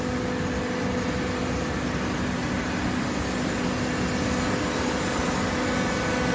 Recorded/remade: recorded